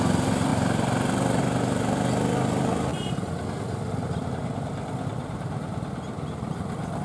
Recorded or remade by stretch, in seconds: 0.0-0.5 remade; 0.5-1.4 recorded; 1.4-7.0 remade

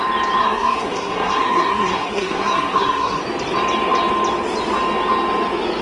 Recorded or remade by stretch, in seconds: 0.0-0.4 recorded; 0.4-3.2 remade; 3.2-5.8 recorded

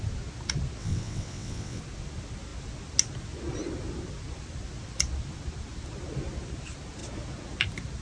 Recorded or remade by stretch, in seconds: 0.0-0.8 recorded; 0.8-1.8 remade; 1.8-8.0 recorded

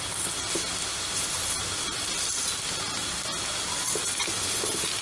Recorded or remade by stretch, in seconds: 0.0-5.0 recorded

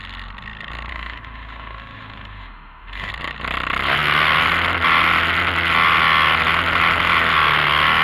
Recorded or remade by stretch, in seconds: 0.0-0.9 recorded; 0.9-3.1 remade; 3.1-8.0 recorded

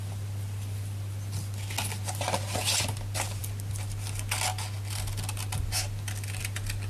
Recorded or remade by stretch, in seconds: 0.0-6.9 recorded

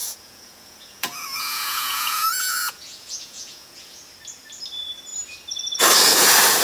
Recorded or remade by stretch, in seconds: 0.0-4.0 remade; 4.0-6.6 recorded

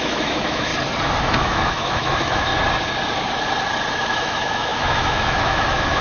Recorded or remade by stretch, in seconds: 0.0-0.7 remade; 0.7-1.2 recorded; 1.2-2.5 remade; 2.5-3.9 recorded; 3.9-6.0 remade